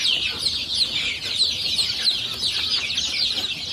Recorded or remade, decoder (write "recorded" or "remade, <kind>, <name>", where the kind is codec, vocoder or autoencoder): recorded